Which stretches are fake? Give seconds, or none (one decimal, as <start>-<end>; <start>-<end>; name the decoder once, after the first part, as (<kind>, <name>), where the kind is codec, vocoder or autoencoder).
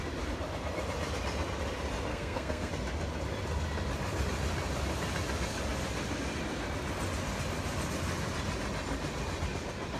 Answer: 2.1-2.7 (codec, SNAC)